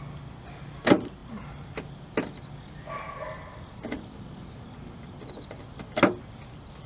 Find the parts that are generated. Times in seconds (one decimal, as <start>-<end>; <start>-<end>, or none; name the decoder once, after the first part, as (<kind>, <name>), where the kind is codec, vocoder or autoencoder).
none

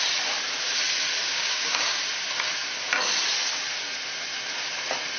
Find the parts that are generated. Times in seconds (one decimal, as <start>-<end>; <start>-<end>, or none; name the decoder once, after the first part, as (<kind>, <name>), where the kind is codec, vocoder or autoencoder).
1.3-2.0 (codec, DAC)

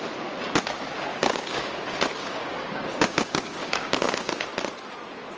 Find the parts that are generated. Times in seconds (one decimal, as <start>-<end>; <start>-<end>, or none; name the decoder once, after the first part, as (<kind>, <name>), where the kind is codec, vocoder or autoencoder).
1.1-1.8 (codec, DAC); 2.2-4.5